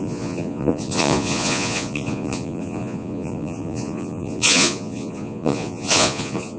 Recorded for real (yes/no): no